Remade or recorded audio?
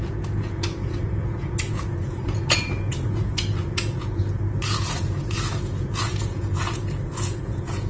remade